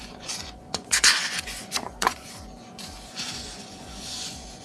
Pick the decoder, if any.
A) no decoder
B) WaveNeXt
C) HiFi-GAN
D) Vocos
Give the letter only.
D